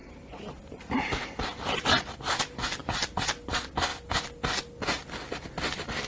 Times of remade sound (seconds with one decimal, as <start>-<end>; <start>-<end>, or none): none